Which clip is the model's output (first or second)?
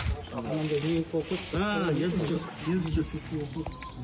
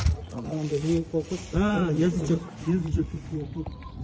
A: second